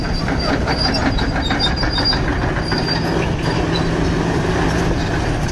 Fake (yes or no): no